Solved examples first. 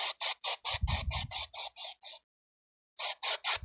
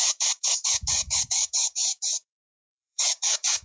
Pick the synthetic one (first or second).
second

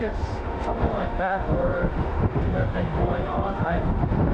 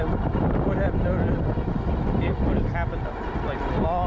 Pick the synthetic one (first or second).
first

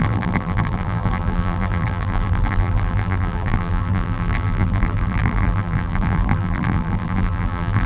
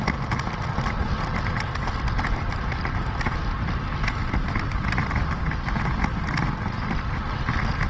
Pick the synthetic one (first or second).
first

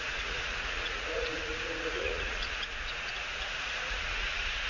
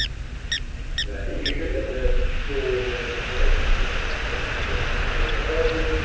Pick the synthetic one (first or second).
first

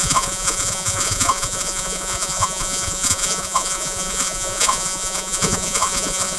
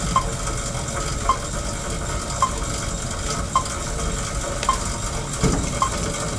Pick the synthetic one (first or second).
first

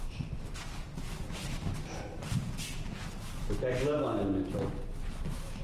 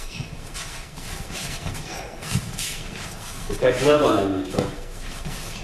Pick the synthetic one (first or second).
second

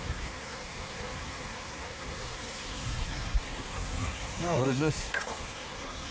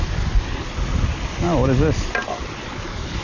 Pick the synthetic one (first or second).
first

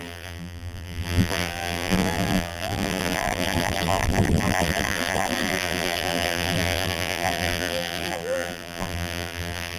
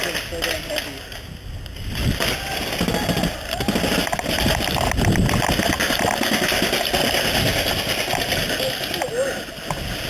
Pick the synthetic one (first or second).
first